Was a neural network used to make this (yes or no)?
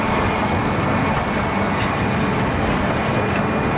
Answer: no